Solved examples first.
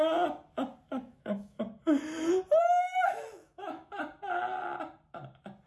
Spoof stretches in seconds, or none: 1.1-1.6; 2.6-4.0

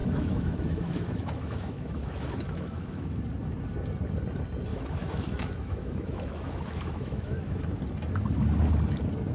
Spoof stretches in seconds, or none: 0.0-3.2; 4.7-7.6